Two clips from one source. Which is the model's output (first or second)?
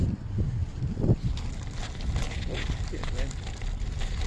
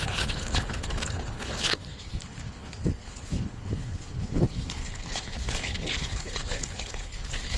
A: second